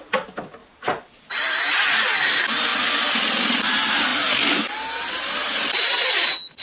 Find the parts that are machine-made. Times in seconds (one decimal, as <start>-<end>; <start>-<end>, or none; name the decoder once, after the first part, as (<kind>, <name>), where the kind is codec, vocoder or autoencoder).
none